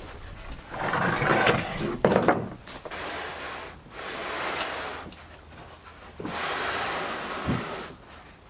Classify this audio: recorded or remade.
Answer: recorded